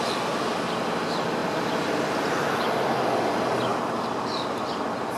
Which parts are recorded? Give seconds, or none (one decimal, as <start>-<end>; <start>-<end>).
0.0-1.4; 2.3-3.7; 4.6-5.2